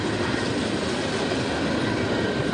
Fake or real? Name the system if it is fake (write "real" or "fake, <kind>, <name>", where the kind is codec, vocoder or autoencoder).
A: real